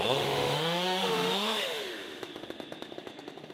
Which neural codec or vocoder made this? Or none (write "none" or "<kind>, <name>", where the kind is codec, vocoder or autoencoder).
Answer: autoencoder, DAC-VAE